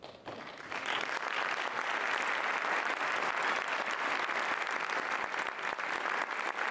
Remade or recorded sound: recorded